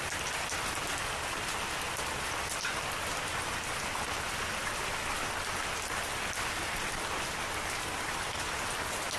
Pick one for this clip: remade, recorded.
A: recorded